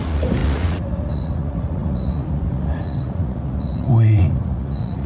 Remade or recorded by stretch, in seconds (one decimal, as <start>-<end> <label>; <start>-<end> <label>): 0.0-5.1 remade